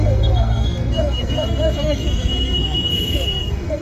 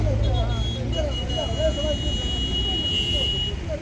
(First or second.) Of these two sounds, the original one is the second